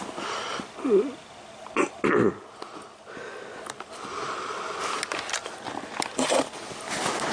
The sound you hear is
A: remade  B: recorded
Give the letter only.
B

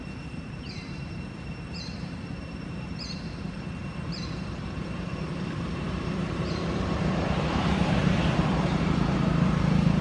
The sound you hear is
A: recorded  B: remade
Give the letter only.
B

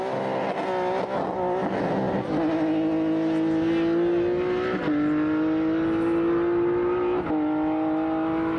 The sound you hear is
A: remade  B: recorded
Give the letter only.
B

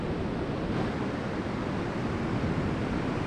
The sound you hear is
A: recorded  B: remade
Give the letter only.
A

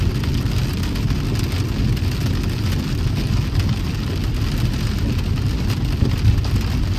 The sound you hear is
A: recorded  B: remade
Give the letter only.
A